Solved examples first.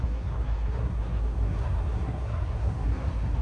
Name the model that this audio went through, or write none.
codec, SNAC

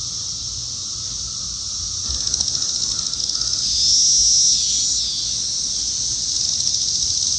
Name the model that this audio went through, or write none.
none